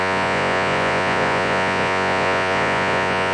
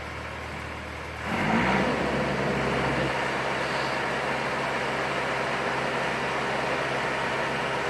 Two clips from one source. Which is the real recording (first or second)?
second